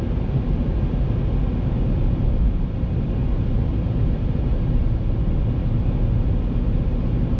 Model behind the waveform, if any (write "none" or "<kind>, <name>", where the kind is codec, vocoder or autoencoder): none